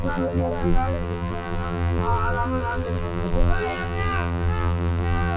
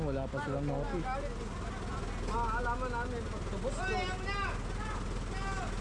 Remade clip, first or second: first